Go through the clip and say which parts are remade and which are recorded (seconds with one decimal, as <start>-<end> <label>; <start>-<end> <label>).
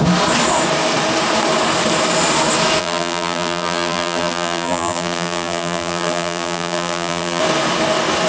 0.0-2.8 recorded; 2.8-7.4 remade; 7.4-8.3 recorded